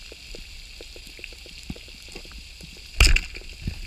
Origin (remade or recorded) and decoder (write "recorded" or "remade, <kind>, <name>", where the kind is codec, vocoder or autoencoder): recorded